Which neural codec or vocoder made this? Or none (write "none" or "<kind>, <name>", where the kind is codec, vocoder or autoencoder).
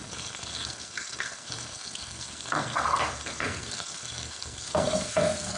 codec, SNAC